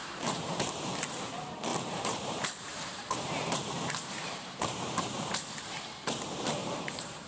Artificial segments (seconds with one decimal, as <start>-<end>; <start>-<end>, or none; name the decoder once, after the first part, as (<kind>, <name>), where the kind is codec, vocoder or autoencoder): 0.0-0.9 (vocoder, BigVGAN v2); 1.7-5.3; 6.6-7.3